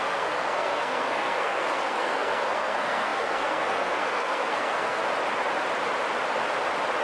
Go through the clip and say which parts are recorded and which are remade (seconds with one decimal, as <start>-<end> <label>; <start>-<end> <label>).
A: 0.0-5.0 remade; 5.0-7.0 recorded